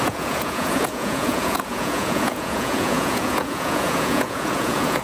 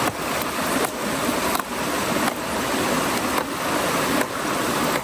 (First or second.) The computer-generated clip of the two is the first